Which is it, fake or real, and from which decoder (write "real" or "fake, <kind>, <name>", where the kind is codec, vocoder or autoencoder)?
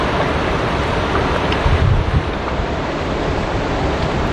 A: fake, vocoder, BigVGAN v2